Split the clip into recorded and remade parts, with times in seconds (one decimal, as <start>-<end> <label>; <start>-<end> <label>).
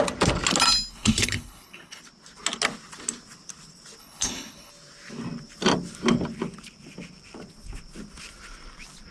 0.0-0.9 recorded; 0.9-2.0 remade; 2.0-4.0 recorded; 4.0-4.7 remade; 4.7-9.1 recorded